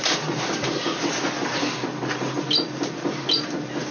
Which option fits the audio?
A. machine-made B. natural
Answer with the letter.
B